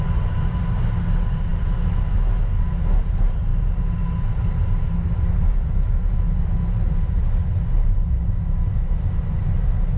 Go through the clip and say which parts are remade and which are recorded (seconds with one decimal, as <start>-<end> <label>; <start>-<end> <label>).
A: 0.0-10.0 recorded